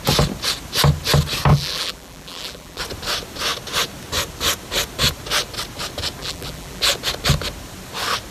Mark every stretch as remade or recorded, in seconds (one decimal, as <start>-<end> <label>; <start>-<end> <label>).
0.0-1.5 recorded; 1.5-2.8 remade; 2.8-6.2 recorded; 6.2-6.8 remade; 6.8-8.3 recorded